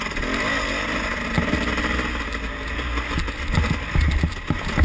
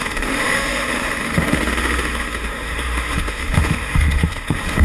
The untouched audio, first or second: first